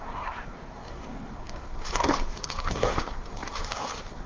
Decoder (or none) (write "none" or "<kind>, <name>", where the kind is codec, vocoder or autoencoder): codec, SNAC